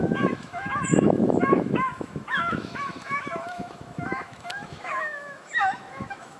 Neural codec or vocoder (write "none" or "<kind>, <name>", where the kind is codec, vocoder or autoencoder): autoencoder, DAC-VAE